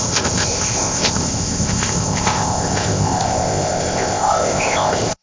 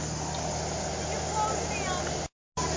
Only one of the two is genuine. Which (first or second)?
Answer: second